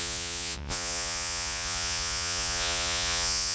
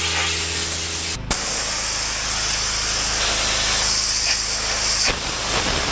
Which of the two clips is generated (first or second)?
first